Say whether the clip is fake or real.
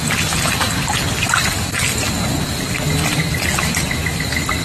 real